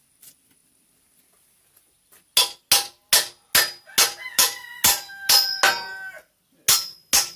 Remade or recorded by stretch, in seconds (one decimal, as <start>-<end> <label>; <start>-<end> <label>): 0.0-7.4 recorded